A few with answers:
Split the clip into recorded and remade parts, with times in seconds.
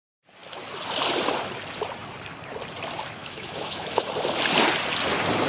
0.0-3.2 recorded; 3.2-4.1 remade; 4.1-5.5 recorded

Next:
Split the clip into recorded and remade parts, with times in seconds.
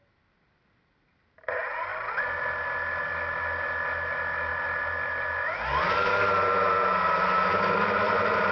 0.0-8.5 recorded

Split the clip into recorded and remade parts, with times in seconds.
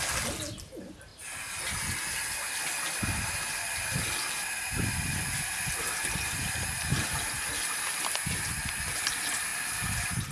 0.0-10.3 recorded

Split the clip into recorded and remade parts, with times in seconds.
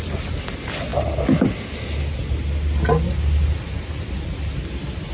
0.0-5.1 recorded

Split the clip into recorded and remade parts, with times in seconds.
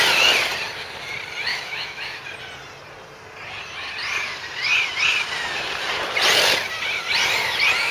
0.0-1.5 recorded; 1.5-2.2 remade; 2.2-7.9 recorded